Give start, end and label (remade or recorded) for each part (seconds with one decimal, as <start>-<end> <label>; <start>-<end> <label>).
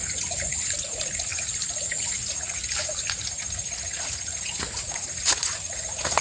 0.0-1.3 remade; 1.3-1.9 recorded; 1.9-2.6 remade; 2.6-3.2 recorded; 3.2-6.2 remade